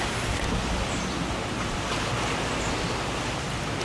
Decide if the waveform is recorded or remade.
recorded